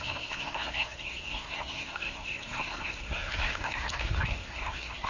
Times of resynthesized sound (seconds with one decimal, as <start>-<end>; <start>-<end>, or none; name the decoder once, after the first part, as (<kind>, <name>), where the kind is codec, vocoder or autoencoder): 0.0-5.1 (codec, SNAC)